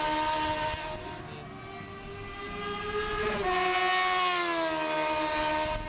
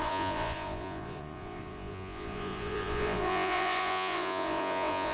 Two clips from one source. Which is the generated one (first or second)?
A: second